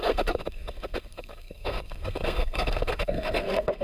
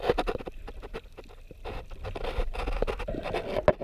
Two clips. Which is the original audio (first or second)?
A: second